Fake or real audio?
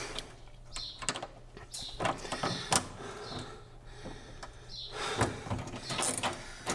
real